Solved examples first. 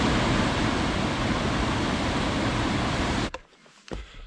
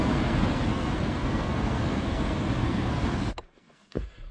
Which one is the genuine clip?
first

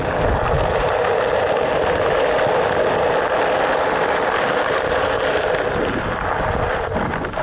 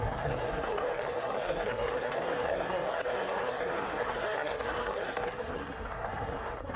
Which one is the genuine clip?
first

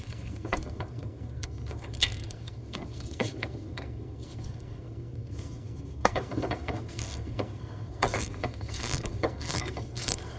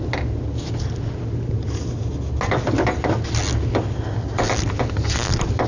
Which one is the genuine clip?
second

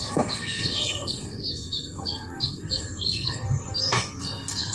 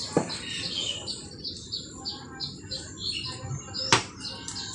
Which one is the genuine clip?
second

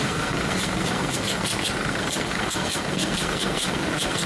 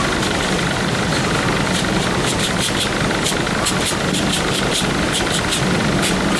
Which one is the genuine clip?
second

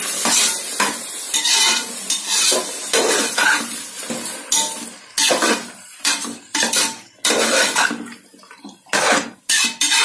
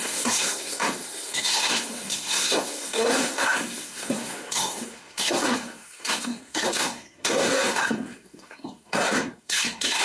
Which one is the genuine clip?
first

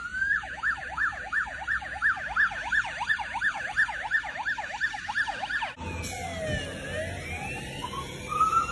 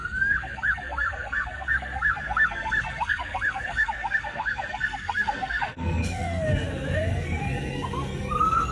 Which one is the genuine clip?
first